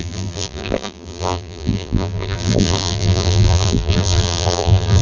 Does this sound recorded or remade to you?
remade